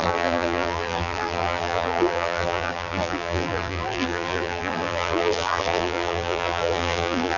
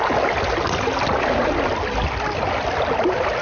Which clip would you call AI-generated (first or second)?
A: first